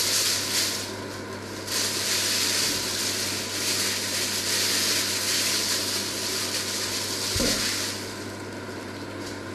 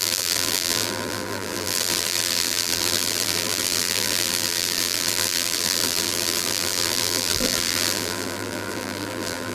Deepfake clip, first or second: second